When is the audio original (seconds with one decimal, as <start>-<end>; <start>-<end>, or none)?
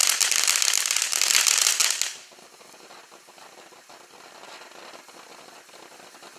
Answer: 0.0-6.4